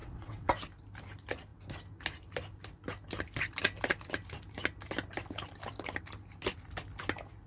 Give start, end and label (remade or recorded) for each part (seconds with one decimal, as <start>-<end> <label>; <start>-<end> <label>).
0.0-0.5 remade; 0.5-7.5 recorded